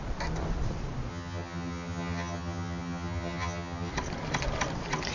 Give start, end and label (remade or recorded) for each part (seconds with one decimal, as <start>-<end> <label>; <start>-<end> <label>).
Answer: 0.0-1.1 recorded; 1.1-3.9 remade; 3.9-5.1 recorded